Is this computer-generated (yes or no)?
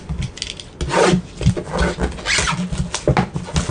no